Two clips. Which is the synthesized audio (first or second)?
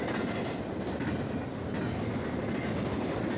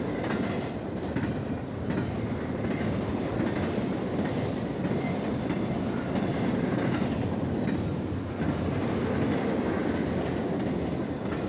second